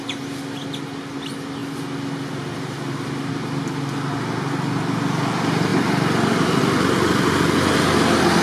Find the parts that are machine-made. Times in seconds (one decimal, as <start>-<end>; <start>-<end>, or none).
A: none